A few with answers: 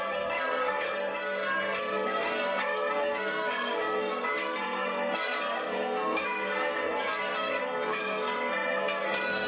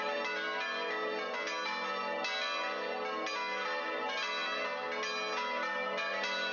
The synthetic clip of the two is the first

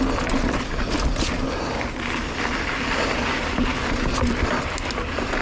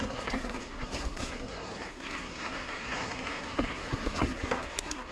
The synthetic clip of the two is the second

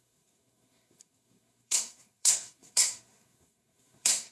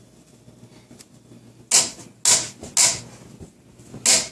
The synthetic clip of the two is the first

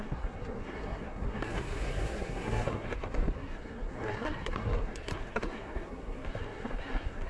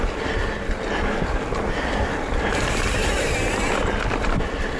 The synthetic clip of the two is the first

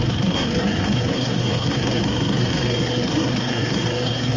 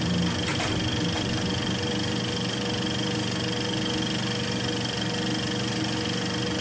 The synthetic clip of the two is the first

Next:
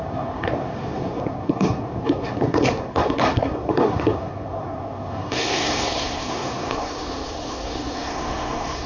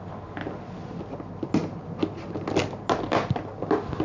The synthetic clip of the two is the first